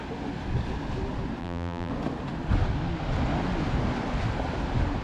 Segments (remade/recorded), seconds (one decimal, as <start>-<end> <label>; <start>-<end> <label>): 0.0-1.4 recorded; 1.4-1.9 remade; 1.9-5.0 recorded